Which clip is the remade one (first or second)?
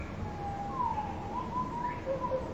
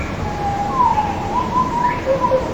second